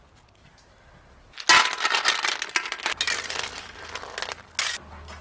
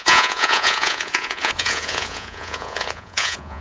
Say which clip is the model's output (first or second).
second